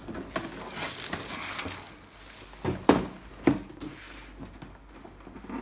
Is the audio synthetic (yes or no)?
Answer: no